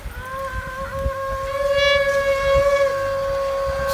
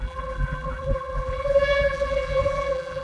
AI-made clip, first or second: second